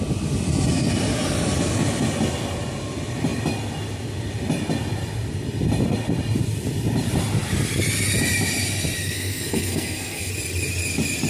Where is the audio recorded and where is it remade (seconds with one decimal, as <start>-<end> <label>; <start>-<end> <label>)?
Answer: 0.0-9.0 recorded; 9.0-10.3 remade; 10.3-11.3 recorded